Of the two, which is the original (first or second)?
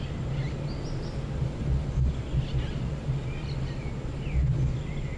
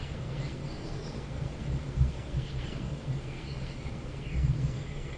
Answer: first